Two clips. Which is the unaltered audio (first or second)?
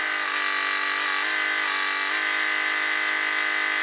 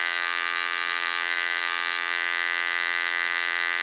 first